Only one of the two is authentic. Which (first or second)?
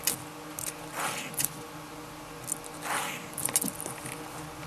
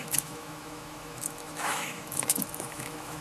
first